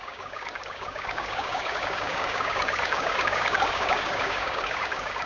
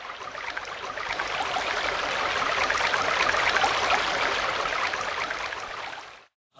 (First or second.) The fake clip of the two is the first